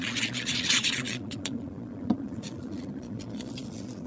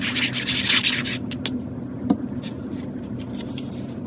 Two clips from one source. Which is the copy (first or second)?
first